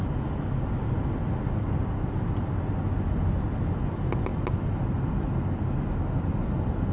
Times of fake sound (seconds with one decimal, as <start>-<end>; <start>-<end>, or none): none